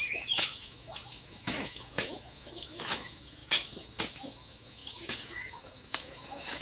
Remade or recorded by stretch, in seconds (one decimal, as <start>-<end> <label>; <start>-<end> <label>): 0.0-6.6 remade